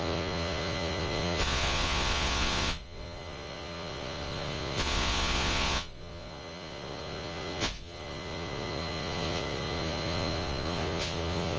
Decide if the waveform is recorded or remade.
remade